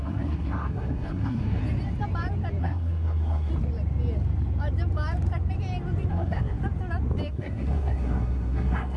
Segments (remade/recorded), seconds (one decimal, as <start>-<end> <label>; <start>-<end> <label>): 0.0-1.6 remade; 1.6-2.6 recorded; 2.6-3.5 remade; 3.5-6.1 recorded; 6.1-6.6 remade; 6.6-7.3 recorded; 7.3-9.0 remade